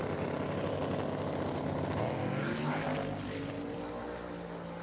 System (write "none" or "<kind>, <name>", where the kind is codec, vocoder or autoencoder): none